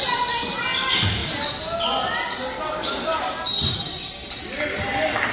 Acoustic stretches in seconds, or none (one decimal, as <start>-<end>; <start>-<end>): 0.0-5.3